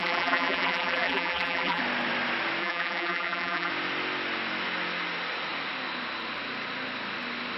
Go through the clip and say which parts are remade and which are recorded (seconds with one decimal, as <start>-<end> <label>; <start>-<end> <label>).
0.0-1.8 remade; 1.8-2.6 recorded; 2.6-3.7 remade; 3.7-7.6 recorded